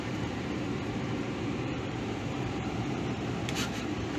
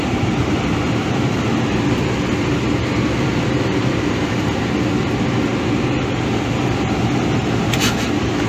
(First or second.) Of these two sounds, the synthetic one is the first